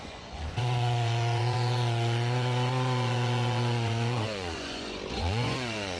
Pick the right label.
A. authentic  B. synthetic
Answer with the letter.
B